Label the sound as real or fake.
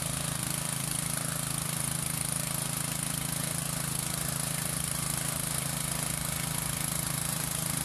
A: real